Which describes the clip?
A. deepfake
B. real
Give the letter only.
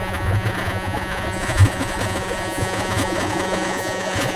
A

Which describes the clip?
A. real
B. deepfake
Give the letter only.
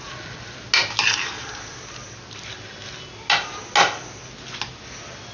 A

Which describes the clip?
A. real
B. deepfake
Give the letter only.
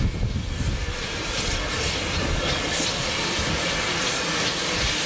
A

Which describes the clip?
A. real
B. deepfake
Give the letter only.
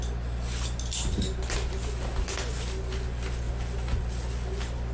A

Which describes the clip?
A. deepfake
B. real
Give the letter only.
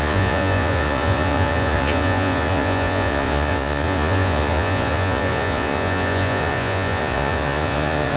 A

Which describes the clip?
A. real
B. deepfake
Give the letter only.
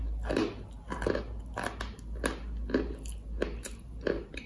A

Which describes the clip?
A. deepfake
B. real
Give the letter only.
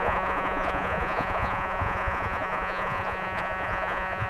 A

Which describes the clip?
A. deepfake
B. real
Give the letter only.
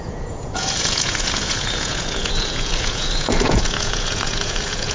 A